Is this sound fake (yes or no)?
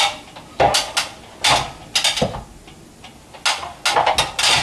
no